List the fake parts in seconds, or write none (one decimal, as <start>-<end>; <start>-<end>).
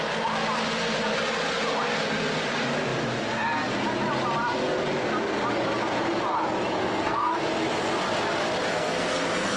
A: 6.8-7.4; 8.7-9.6